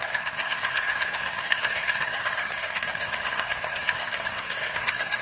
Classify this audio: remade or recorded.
remade